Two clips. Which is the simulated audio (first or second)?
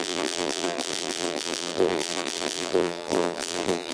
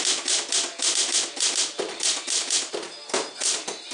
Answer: first